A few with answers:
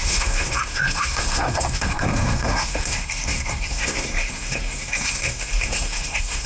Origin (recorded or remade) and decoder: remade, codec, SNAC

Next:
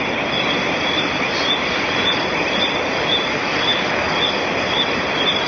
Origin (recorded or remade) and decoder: recorded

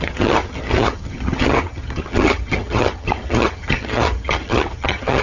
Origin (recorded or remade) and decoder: remade, vocoder, HiFi-GAN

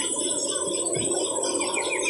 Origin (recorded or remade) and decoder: recorded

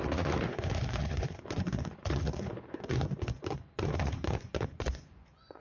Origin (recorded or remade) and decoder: remade, vocoder, Vocos